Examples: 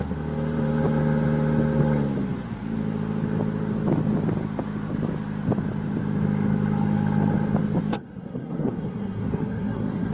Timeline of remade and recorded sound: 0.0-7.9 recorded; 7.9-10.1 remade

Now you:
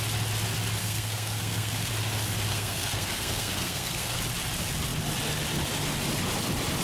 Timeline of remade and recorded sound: 0.0-0.8 recorded; 0.8-1.9 remade; 1.9-2.5 recorded; 2.5-4.2 remade; 4.2-6.8 recorded